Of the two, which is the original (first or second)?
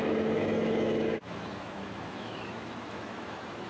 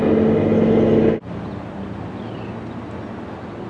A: second